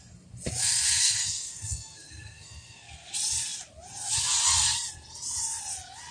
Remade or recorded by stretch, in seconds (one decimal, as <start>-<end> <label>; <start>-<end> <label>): 0.0-0.6 recorded; 0.6-3.1 remade; 3.1-6.1 recorded